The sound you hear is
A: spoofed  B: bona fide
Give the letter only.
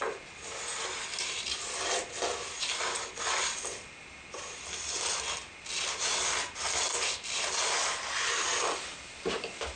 B